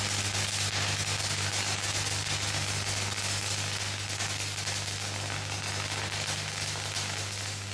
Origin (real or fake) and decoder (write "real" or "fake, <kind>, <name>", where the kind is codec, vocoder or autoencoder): real